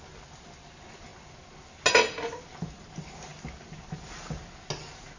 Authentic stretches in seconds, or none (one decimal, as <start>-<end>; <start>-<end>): 0.0-5.2